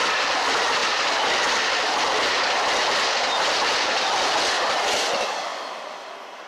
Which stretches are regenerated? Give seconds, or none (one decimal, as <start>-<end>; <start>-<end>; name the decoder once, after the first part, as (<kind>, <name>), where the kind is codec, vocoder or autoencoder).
none